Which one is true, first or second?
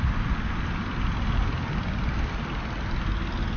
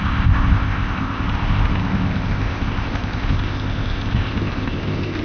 first